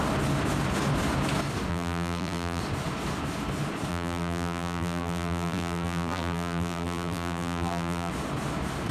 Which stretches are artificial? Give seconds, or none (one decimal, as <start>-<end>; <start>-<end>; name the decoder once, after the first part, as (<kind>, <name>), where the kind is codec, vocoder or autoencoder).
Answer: 1.7-2.6 (vocoder, BigVGAN v2); 3.9-8.1